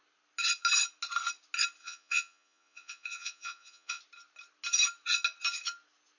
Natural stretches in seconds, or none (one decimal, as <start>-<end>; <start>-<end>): 0.0-1.8; 4.0-6.2